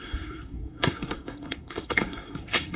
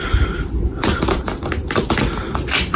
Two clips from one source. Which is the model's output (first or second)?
first